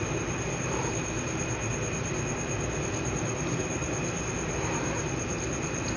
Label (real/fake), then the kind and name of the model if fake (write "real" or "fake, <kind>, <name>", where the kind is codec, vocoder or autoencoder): real